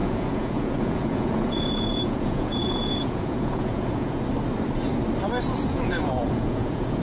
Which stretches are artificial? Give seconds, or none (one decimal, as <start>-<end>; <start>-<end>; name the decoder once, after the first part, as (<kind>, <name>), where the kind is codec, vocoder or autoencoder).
0.0-4.2 (vocoder, Vocos); 5.7-7.0